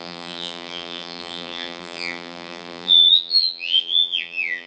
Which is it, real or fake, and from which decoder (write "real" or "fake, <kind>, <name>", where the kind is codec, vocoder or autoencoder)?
fake, vocoder, BigVGAN v2